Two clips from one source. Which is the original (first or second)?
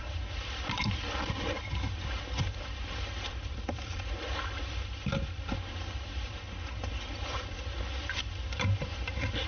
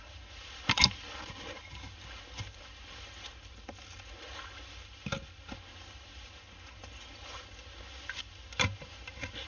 second